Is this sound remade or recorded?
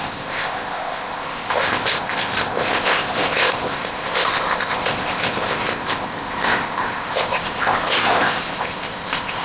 remade